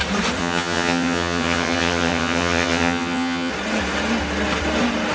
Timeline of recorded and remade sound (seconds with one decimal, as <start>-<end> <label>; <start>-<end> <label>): 0.0-0.4 recorded; 0.4-3.5 remade; 3.5-5.1 recorded

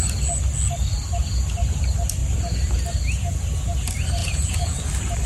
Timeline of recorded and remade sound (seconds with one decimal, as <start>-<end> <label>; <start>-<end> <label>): 0.0-4.2 recorded; 4.2-4.8 remade; 4.8-5.3 recorded

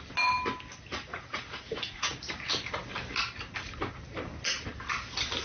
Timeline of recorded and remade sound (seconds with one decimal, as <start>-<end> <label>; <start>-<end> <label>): 0.0-0.9 recorded; 0.9-2.2 remade; 2.2-5.4 recorded